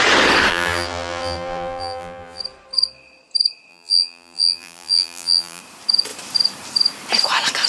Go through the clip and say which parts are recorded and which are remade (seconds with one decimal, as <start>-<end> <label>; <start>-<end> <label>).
0.0-0.5 recorded; 0.5-2.4 remade; 2.4-3.7 recorded; 3.7-5.6 remade; 5.6-7.7 recorded